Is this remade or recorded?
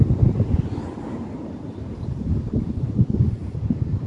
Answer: remade